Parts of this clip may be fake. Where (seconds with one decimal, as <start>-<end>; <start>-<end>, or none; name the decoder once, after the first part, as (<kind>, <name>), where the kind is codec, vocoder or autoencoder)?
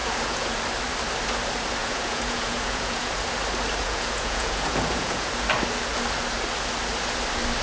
0.0-0.6 (vocoder, Vocos); 1.8-3.2; 3.8-5.3